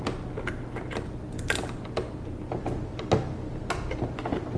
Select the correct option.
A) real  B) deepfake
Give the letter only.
A